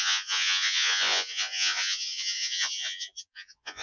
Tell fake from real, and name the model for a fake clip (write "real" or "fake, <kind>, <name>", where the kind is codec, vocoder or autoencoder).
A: fake, vocoder, Vocos